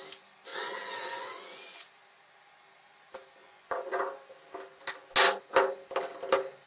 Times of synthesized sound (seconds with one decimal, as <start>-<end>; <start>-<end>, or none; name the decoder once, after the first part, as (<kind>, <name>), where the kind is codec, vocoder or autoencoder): 0.5-1.8 (vocoder, Vocos); 3.4-4.0

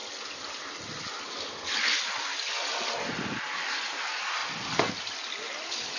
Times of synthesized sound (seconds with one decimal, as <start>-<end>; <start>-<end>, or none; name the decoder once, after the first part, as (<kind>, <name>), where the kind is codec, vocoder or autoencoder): none

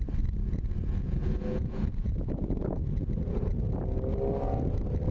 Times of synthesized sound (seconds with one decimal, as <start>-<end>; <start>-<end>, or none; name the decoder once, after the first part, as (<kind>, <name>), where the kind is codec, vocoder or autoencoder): 0.4-3.5 (vocoder, Vocos)

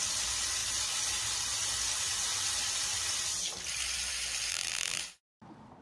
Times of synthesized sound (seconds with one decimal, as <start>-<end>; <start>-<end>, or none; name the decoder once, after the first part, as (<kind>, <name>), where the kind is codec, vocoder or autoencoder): 4.5-5.0 (vocoder, BigVGAN v2)

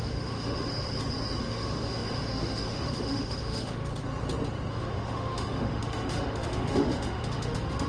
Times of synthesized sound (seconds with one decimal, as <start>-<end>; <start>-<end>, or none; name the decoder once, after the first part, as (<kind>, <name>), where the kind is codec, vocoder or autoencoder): 0.0-0.7 (autoencoder, DAC-VAE); 1.4-3.9; 4.7-7.9

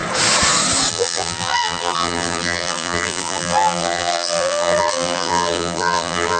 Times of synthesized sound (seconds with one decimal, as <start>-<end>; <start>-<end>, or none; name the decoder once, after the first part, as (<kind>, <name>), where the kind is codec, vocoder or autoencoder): 0.9-6.4 (vocoder, BigVGAN v2)

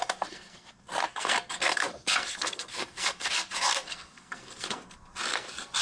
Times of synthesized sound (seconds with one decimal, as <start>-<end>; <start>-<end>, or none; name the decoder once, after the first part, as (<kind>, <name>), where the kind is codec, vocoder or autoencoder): 0.0-5.8 (codec, SNAC)